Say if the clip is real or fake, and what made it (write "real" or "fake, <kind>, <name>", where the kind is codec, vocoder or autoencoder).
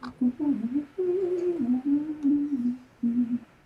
fake, vocoder, BigVGAN v2